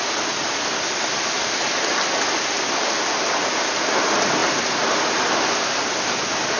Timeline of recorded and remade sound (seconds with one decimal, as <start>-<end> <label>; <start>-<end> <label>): 0.0-6.6 recorded